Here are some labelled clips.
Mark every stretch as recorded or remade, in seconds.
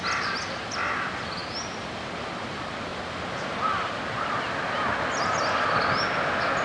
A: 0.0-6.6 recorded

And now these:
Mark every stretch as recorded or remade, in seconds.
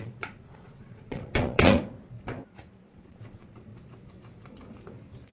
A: 0.0-1.8 remade; 1.8-2.9 recorded; 2.9-3.7 remade; 3.7-5.3 recorded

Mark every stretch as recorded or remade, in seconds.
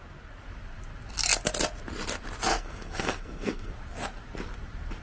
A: 0.0-2.5 recorded; 2.5-3.7 remade; 3.7-5.0 recorded